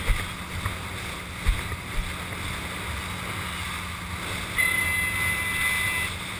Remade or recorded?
recorded